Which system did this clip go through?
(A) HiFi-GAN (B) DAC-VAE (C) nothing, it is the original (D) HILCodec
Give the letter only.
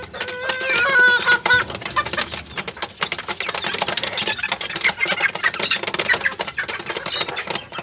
C